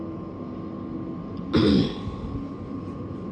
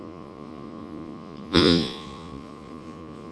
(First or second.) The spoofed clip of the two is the second